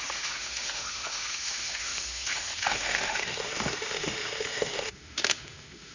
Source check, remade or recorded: remade